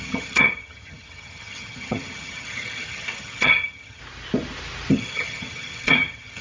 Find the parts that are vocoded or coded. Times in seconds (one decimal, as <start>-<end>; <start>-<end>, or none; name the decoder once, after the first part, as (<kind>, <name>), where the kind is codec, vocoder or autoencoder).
0.0-4.0 (vocoder, HiFi-GAN); 4.9-6.4